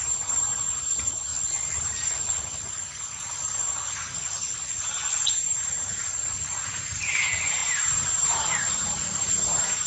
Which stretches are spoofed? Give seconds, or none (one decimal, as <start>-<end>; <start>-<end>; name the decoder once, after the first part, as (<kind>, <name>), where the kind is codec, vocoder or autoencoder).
0.0-1.3 (vocoder, BigVGAN v2); 5.3-5.9; 6.7-9.9